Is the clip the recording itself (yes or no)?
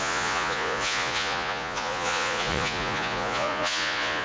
no